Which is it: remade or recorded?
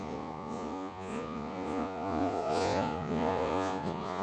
remade